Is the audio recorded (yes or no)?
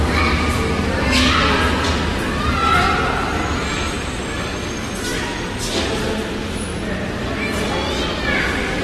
yes